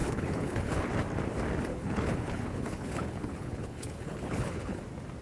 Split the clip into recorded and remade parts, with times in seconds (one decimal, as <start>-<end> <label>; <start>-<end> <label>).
0.0-0.9 remade; 0.9-1.7 recorded; 1.7-4.8 remade; 4.8-5.2 recorded